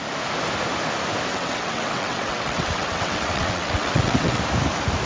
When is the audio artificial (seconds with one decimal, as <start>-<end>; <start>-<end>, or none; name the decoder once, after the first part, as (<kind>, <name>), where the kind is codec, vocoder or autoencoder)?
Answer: 1.3-4.4 (vocoder, WaveNeXt)